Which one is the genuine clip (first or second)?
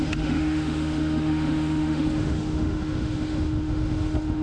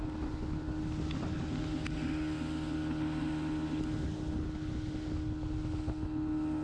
second